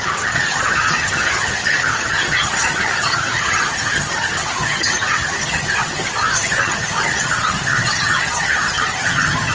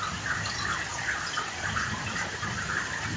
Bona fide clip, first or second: second